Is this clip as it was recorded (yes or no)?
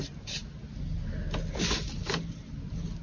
yes